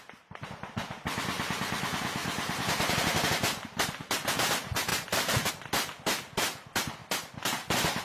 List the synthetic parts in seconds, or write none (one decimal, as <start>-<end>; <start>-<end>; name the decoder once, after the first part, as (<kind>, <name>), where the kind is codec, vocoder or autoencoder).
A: 2.2-3.3 (vocoder, BigVGAN v2); 4.9-5.5